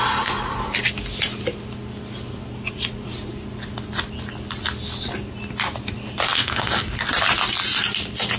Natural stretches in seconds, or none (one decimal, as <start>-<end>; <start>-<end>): 0.0-6.4; 7.1-8.4